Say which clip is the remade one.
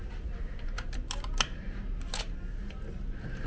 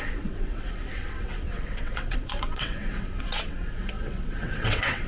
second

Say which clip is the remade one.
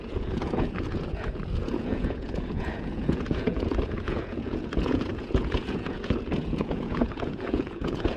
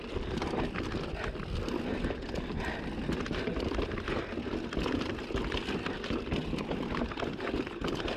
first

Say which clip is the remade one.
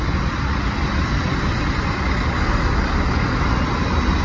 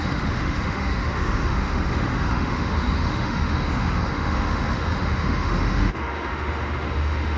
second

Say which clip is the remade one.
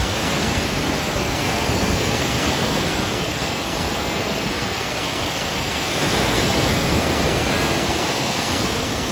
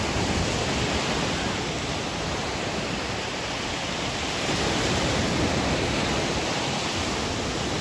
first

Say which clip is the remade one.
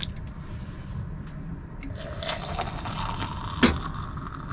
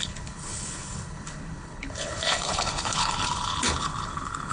second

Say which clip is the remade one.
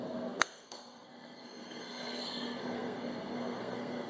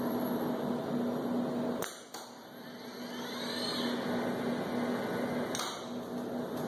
first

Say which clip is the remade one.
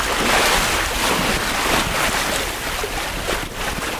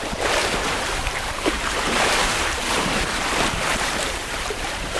second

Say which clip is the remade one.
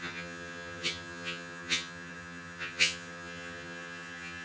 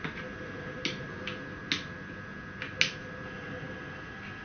first